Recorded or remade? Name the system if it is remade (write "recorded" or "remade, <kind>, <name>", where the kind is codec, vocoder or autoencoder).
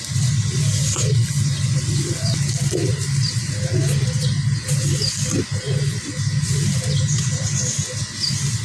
remade, vocoder, BigVGAN v2